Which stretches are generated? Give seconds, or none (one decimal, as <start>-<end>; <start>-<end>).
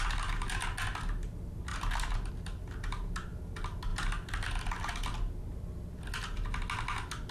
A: none